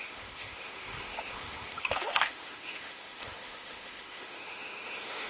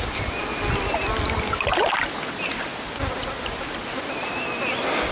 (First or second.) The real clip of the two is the second